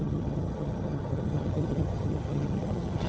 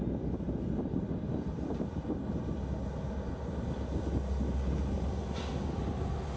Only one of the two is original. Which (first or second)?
second